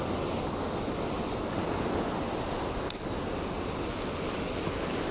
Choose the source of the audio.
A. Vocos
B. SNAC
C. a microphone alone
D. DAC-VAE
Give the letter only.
C